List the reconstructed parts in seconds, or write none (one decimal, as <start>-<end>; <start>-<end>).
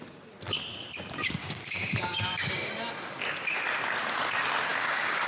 1.4-2.7; 4.7-5.3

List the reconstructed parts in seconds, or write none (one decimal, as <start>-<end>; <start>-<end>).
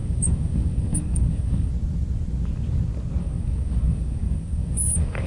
0.0-1.7; 3.2-5.3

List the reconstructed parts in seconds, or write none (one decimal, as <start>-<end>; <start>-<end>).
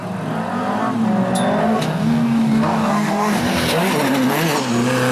1.6-3.4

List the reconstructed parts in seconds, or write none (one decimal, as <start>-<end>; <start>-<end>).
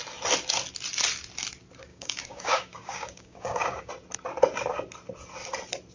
1.9-3.9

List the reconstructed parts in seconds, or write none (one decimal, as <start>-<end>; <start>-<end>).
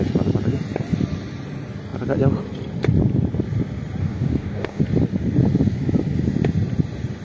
4.0-4.8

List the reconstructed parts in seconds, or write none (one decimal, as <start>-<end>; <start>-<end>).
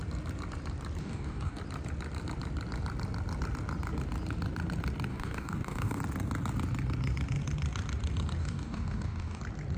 1.0-1.6; 5.1-6.0; 8.4-9.4